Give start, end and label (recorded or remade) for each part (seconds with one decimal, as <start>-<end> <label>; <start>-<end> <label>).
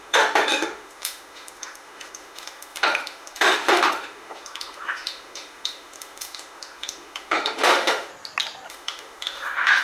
0.0-8.1 remade; 8.1-8.7 recorded; 8.7-9.8 remade